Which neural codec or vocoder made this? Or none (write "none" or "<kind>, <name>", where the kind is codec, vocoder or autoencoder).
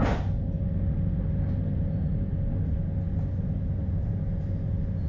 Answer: none